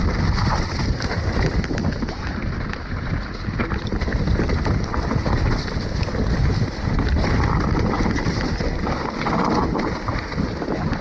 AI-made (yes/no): no